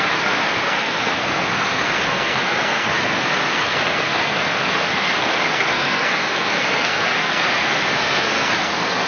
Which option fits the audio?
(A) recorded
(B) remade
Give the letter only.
B